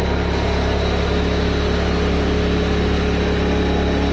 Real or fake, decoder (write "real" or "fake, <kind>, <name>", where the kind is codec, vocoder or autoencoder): real